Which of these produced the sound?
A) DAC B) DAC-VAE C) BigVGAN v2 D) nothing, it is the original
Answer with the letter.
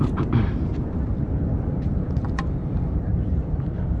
C